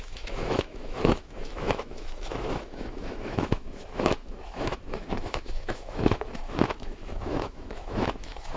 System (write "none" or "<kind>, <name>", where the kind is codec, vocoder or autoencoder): autoencoder, DAC-VAE